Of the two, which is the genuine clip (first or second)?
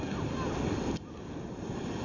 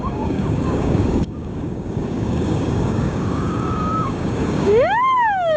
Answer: first